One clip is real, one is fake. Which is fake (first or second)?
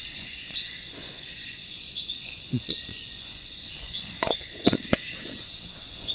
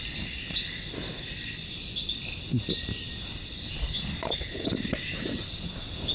first